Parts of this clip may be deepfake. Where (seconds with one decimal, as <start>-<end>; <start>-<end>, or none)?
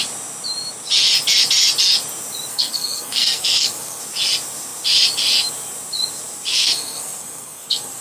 2.5-4.0; 6.5-8.0